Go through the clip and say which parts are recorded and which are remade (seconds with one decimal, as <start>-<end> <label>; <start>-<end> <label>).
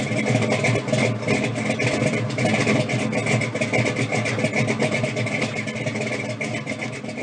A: 0.0-7.2 recorded